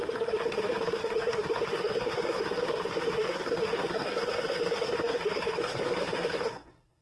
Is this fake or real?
fake